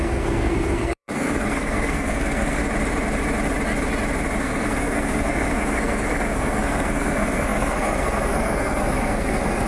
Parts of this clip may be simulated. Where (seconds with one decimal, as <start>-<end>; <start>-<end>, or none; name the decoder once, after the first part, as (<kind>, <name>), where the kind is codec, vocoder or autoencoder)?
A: 0.0-2.6 (codec, SNAC); 4.4-9.7

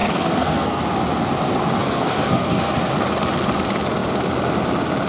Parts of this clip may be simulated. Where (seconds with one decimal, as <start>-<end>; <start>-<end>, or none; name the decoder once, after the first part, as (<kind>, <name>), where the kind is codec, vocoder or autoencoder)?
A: 0.0-0.8 (codec, SNAC); 1.8-2.7

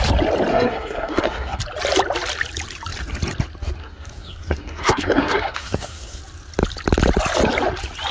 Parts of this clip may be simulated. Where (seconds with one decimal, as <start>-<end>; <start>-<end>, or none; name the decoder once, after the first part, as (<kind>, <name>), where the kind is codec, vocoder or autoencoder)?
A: 0.5-1.6 (codec, SNAC); 3.8-6.2

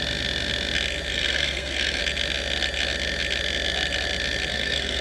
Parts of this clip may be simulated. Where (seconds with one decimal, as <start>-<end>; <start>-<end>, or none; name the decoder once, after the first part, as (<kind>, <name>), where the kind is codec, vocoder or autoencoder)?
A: 1.1-2.0 (codec, SNAC); 4.5-5.0

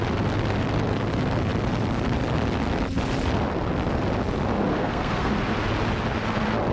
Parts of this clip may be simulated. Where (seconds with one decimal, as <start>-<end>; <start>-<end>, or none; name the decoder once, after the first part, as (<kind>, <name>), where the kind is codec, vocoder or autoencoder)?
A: 4.7-5.3 (codec, SNAC)